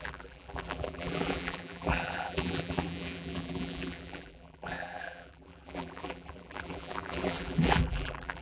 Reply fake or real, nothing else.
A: fake